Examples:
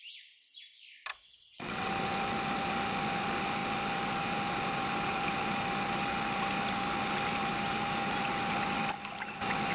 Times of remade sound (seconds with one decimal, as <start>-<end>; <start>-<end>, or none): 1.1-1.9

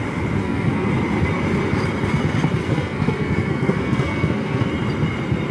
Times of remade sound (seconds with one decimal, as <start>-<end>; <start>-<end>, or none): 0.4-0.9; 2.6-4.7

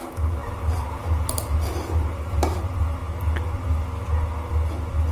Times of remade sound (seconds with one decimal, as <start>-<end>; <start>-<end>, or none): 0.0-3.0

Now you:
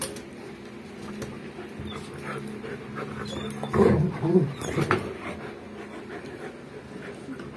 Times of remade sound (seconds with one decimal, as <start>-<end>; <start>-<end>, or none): none

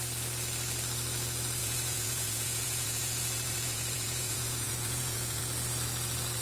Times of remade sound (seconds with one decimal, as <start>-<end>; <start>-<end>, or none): 1.6-5.4

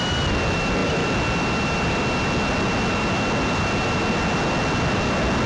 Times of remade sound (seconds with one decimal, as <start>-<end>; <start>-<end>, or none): none

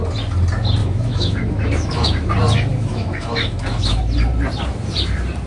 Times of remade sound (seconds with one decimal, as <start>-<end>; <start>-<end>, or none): 0.8-2.3; 2.7-4.0